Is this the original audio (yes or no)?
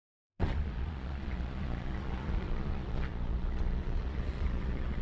no